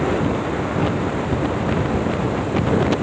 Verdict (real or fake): real